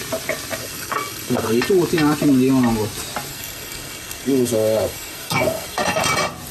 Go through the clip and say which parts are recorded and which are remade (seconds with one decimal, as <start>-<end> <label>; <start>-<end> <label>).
0.0-0.6 recorded; 0.6-1.6 remade; 1.6-3.3 recorded; 3.3-6.0 remade; 6.0-6.5 recorded

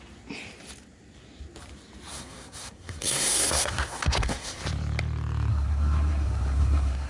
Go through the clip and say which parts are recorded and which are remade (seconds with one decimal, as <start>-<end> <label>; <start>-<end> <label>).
0.0-2.1 recorded; 2.1-4.6 remade; 4.6-5.5 recorded; 5.5-7.1 remade